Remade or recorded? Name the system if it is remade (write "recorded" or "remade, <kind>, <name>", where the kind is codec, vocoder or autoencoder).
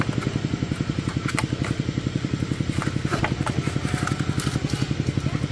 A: recorded